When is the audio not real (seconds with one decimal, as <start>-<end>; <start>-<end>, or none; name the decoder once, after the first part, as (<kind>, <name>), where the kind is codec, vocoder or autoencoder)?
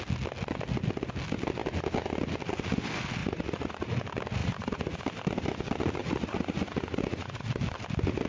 3.2-4.0 (vocoder, Vocos); 4.4-5.0; 6.0-7.5